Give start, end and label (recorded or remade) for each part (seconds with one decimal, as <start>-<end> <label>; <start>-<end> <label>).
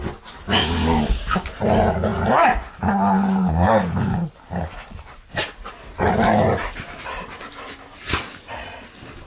0.0-9.3 recorded